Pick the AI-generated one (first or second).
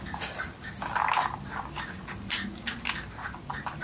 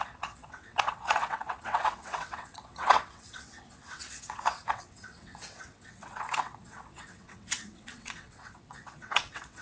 second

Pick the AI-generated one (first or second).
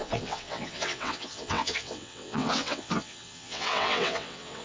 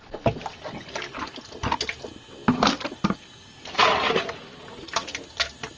first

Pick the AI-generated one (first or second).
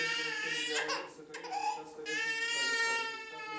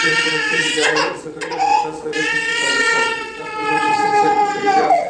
second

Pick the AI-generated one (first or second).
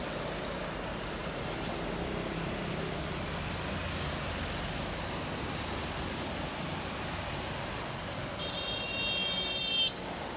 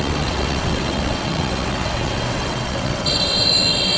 second